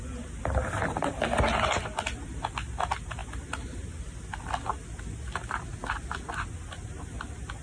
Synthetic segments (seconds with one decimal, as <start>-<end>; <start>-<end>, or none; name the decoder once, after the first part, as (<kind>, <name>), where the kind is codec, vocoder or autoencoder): none